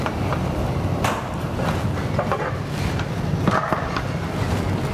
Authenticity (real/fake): real